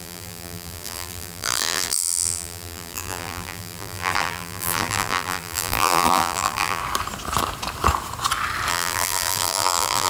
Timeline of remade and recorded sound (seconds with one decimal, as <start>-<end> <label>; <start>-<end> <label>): 0.0-6.8 remade; 6.8-8.7 recorded; 8.7-10.1 remade